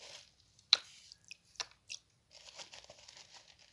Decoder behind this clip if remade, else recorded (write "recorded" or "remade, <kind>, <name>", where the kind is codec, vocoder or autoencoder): recorded